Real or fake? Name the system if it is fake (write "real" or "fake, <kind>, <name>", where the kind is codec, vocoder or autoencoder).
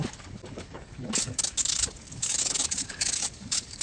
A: fake, codec, DAC